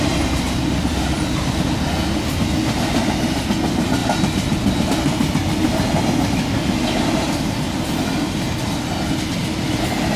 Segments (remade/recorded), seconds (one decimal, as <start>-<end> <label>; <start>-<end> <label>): 0.0-0.6 recorded; 0.6-1.2 remade; 1.2-4.0 recorded; 4.0-4.9 remade; 4.9-10.2 recorded